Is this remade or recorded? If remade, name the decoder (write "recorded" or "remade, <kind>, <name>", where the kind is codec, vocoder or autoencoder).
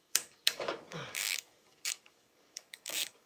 remade, codec, DAC